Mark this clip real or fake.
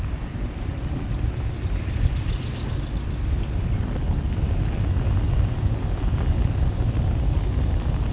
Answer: real